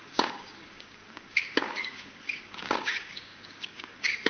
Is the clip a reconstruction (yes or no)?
yes